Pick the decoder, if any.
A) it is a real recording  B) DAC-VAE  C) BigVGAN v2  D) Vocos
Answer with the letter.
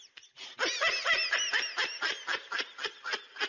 A